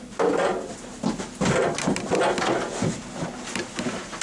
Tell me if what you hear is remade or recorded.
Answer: recorded